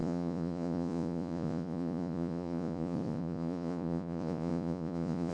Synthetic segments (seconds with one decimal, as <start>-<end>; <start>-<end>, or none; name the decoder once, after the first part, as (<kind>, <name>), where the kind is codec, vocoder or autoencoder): 0.0-5.3 (vocoder, Vocos)